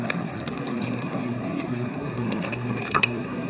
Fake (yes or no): yes